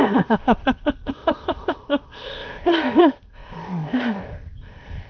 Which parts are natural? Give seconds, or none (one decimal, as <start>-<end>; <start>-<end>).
none